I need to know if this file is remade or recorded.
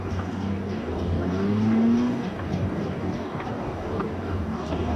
remade